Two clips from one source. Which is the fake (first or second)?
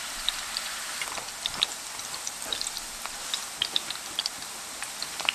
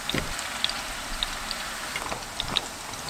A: first